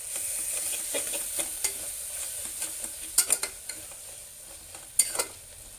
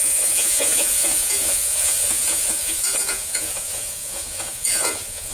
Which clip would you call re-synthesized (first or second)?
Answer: second